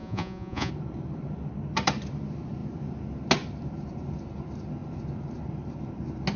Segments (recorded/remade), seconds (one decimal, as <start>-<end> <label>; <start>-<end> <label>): 0.0-0.7 remade; 0.7-6.4 recorded